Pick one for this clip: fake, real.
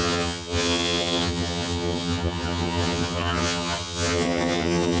fake